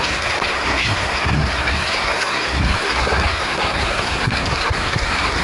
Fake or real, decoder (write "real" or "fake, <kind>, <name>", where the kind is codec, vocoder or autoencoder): fake, codec, SNAC